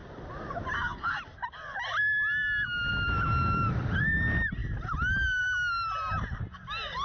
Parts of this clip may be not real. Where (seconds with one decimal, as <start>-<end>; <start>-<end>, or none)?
none